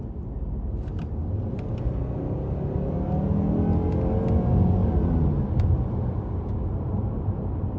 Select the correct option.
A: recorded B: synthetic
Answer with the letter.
A